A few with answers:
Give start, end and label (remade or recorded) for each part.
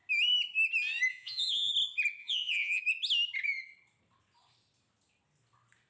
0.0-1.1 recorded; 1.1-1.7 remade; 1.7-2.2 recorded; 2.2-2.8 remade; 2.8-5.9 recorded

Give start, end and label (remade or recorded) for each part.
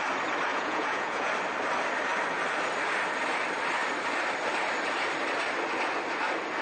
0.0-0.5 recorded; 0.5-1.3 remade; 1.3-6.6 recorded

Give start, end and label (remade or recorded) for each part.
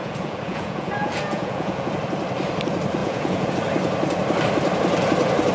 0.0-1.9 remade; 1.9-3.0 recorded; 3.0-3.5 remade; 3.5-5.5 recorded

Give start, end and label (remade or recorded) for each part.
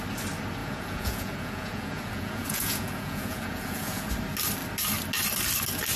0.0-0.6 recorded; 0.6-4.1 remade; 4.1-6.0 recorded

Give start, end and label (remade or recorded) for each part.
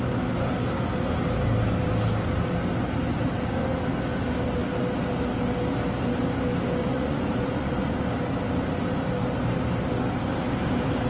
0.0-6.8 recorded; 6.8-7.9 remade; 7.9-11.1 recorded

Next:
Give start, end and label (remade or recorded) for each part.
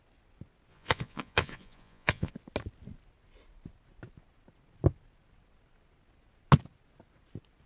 0.0-0.7 recorded; 0.7-2.3 remade; 2.3-7.7 recorded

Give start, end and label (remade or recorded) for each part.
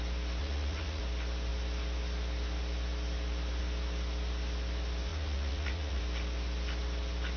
0.0-0.4 recorded; 0.4-1.0 remade; 1.0-5.1 recorded; 5.1-6.0 remade; 6.0-7.4 recorded